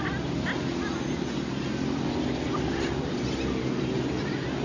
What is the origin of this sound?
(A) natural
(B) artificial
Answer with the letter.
A